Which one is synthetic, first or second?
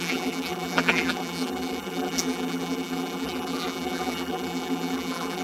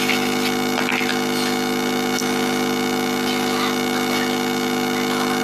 first